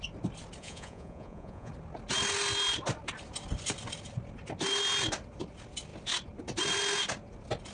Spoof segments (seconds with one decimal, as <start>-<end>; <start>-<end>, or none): 0.6-1.7